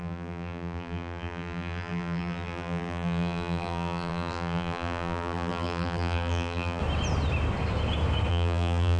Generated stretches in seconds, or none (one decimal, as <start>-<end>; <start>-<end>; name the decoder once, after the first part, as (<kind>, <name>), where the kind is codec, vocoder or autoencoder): 0.0-6.8 (vocoder, BigVGAN v2); 8.3-9.0